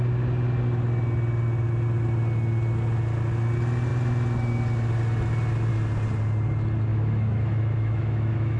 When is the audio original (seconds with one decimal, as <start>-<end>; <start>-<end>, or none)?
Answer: 0.0-6.9